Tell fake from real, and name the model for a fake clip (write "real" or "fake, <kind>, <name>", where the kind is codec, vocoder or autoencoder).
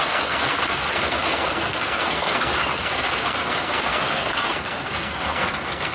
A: fake, codec, SNAC